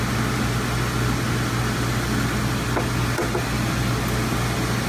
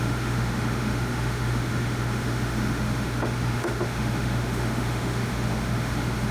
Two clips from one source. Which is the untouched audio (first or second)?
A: first